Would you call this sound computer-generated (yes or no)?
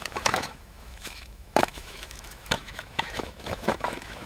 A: yes